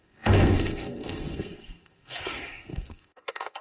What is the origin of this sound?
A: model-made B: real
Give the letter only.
A